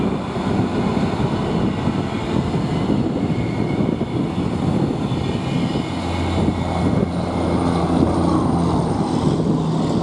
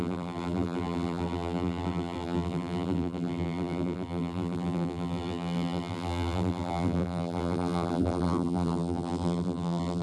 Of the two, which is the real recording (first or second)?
first